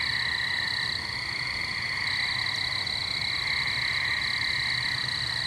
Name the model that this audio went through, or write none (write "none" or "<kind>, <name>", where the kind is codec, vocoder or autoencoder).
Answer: none